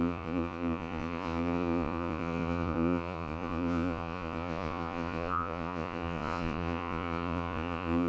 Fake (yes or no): yes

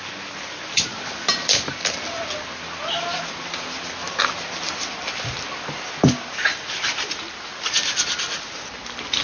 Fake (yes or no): no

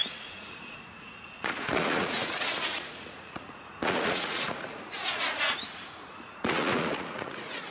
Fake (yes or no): yes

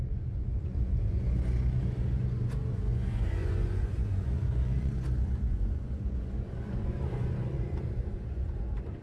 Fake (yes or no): yes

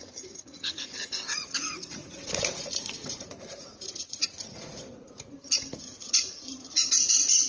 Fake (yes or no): yes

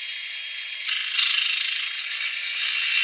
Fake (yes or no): no